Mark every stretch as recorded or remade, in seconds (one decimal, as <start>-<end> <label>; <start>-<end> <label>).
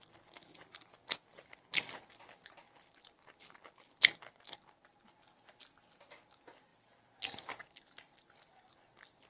0.0-9.3 recorded